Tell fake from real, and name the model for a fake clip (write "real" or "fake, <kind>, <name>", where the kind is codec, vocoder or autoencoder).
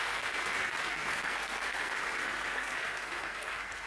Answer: fake, codec, SNAC